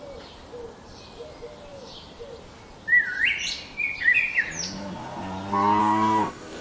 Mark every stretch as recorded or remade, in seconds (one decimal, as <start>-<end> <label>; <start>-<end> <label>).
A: 0.0-5.8 recorded; 5.8-6.6 remade